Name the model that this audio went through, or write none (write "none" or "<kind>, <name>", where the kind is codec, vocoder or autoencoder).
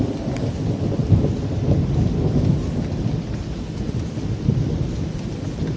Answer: none